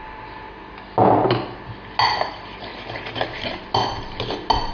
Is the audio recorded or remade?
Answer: recorded